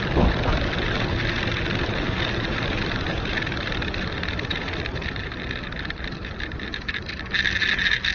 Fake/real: real